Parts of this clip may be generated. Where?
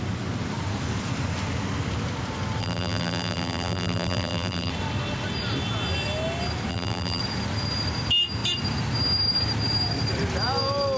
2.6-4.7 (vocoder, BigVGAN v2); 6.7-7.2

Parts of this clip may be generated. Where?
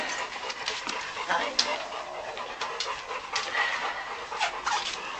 none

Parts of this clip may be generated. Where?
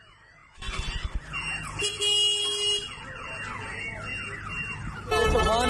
none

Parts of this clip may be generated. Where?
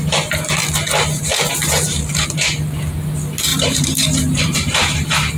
3.5-5.4 (vocoder, BigVGAN v2)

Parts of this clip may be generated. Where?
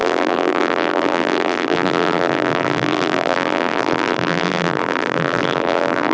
0.0-6.1 (vocoder, BigVGAN v2)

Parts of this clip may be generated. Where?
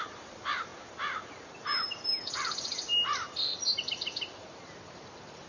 0.0-2.9 (vocoder, BigVGAN v2); 3.9-5.5